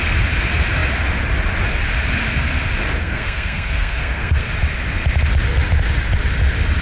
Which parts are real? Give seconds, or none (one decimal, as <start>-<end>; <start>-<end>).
0.0-3.0; 4.5-6.8